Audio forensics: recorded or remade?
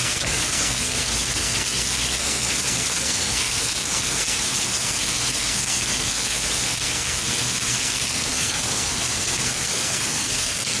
remade